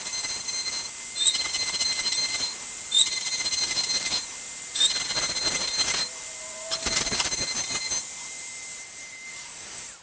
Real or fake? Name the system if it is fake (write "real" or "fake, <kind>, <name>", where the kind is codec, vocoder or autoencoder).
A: fake, vocoder, BigVGAN v2